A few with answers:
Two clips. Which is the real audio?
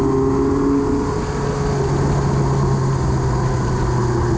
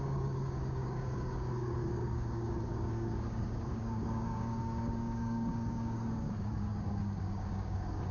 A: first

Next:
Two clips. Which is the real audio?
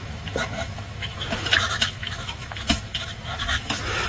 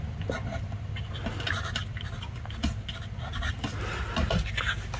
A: second